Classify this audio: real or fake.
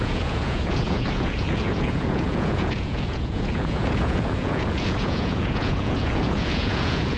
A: fake